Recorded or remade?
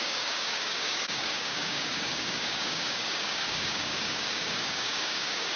remade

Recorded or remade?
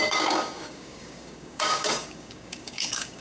remade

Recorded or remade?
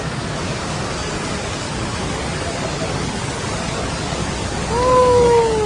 remade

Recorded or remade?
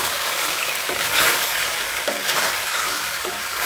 remade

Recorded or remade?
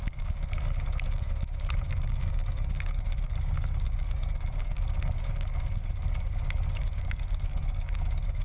remade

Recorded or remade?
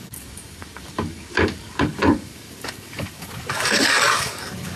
remade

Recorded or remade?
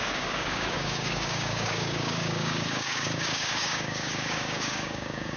remade